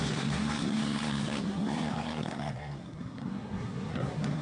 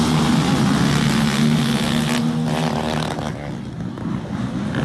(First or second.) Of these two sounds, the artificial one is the first